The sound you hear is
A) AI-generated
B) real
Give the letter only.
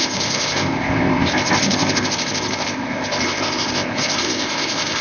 A